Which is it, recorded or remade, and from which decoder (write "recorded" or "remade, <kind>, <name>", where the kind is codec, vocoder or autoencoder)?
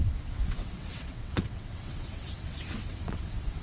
remade, vocoder, WaveNeXt